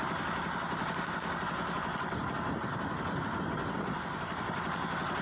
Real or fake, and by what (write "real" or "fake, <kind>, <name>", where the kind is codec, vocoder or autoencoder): real